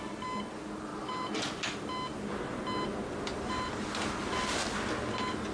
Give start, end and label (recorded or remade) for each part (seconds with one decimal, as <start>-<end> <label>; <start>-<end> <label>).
0.0-5.5 recorded